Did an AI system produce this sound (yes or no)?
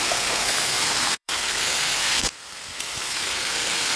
yes